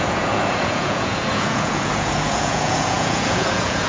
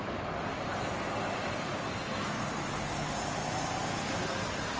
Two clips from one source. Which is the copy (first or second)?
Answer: first